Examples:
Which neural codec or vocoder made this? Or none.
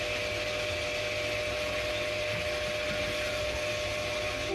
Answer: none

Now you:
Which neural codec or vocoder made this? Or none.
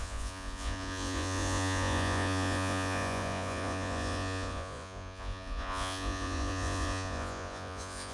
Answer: vocoder, Vocos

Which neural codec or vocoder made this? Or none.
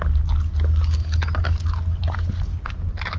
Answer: none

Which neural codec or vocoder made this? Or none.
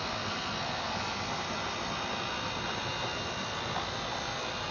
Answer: none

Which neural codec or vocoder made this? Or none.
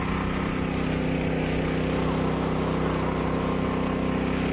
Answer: none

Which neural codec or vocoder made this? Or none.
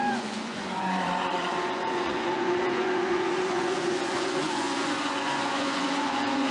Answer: vocoder, Vocos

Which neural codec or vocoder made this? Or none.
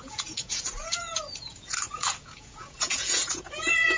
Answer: vocoder, Vocos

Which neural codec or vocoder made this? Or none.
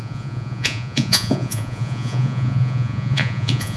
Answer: vocoder, Vocos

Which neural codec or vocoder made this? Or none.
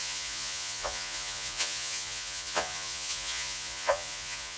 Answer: vocoder, Vocos